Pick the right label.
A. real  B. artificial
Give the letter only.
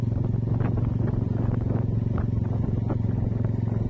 A